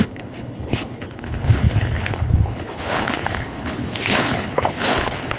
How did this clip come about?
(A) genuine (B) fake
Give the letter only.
B